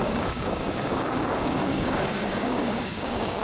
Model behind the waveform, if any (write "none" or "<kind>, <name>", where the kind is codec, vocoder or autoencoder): codec, DAC